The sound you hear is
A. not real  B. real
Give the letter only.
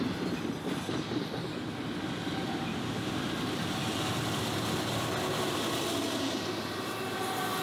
B